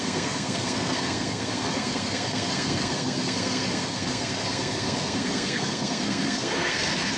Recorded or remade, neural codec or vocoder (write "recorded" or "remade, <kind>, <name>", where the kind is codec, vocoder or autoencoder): remade, codec, SNAC